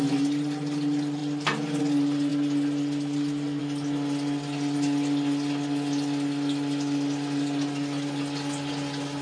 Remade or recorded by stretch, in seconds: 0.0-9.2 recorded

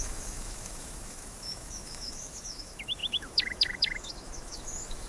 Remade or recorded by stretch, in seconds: 0.0-5.1 remade

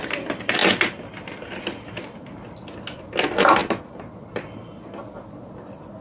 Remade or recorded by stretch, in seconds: 0.0-6.0 recorded

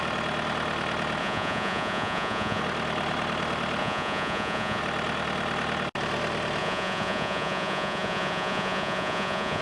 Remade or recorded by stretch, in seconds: 0.0-1.2 recorded; 1.2-2.6 remade; 2.6-3.8 recorded; 3.8-4.8 remade; 4.8-6.6 recorded; 6.6-9.6 remade

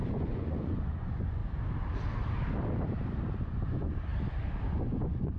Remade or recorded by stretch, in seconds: 0.0-1.4 remade; 1.4-3.4 recorded; 3.4-4.1 remade; 4.1-4.7 recorded; 4.7-5.4 remade

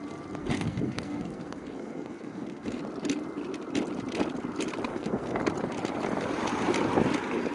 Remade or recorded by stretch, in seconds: 0.0-0.4 recorded; 0.4-2.8 remade; 2.8-4.9 recorded; 4.9-5.4 remade; 5.4-7.5 recorded

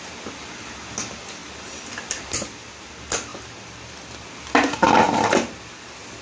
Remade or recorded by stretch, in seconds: 0.0-1.4 recorded; 1.4-2.9 remade; 2.9-6.2 recorded